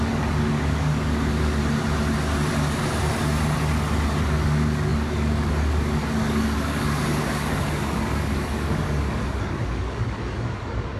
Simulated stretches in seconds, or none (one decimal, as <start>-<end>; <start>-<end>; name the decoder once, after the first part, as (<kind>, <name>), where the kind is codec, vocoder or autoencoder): 0.0-1.6 (codec, DAC); 4.2-11.0

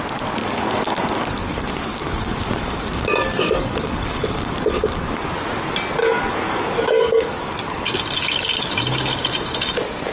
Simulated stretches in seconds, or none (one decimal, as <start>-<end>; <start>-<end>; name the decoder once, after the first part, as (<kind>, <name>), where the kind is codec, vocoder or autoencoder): 0.4-5.3 (codec, DAC); 6.0-8.0

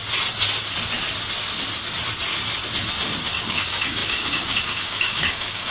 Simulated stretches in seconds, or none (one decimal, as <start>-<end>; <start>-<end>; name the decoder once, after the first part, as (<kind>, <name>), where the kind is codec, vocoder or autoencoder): 3.4-5.7 (codec, DAC)

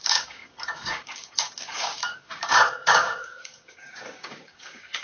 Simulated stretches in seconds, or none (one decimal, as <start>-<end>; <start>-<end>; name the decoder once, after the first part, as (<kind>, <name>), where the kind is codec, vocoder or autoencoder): 0.0-5.0 (codec, DAC)

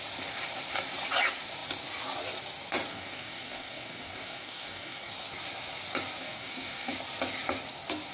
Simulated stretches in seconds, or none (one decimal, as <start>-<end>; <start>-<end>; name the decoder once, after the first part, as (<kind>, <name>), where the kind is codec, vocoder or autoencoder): 2.9-5.1 (codec, DAC); 6.2-6.9